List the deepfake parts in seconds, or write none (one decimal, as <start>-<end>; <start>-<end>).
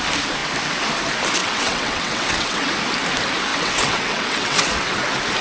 1.4-2.7; 3.5-4.7